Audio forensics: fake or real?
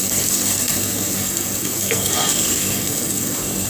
fake